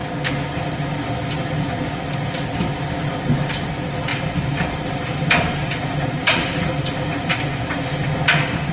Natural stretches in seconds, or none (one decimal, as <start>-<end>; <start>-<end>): 0.0-4.1; 8.1-8.7